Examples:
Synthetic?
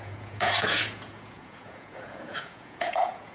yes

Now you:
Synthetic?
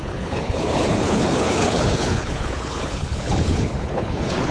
yes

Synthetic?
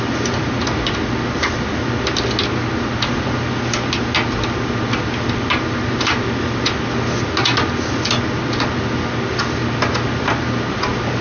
no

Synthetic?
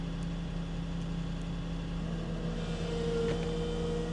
no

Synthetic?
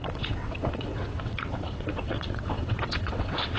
yes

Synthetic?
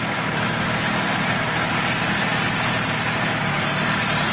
no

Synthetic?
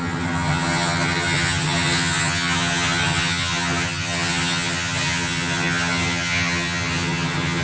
yes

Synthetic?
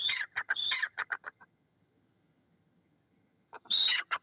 yes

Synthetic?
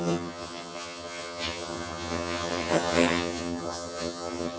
yes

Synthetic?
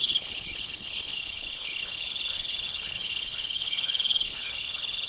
yes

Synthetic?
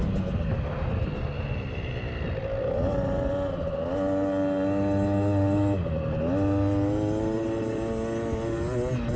no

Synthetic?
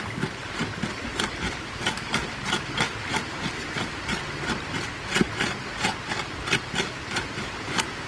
no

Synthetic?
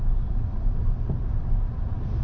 no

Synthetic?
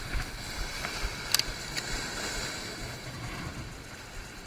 no